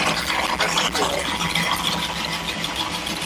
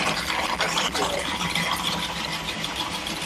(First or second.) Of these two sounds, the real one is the first